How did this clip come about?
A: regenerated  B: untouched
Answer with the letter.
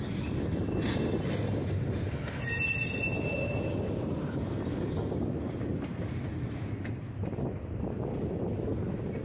B